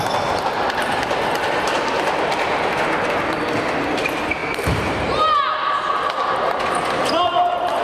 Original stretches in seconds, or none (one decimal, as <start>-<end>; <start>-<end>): 0.0-7.8